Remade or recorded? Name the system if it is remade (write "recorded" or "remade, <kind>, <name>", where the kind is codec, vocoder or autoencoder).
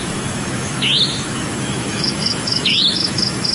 remade, autoencoder, DAC-VAE